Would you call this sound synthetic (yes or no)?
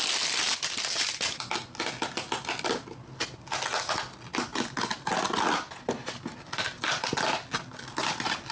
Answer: no